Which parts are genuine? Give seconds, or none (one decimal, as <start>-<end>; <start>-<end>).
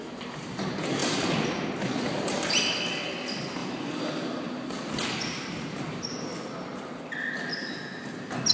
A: 0.0-1.0; 1.7-3.6; 5.8-8.5